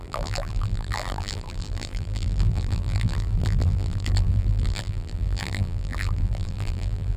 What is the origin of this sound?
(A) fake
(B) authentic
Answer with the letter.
A